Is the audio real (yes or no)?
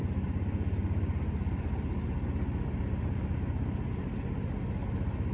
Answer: yes